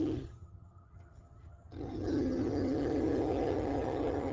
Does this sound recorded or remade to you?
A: remade